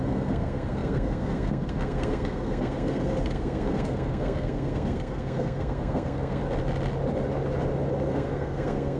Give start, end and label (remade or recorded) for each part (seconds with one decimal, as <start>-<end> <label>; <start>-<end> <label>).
0.0-6.4 remade; 6.4-8.1 recorded; 8.1-9.0 remade